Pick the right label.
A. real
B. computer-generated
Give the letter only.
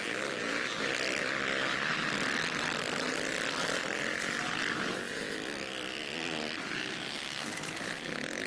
A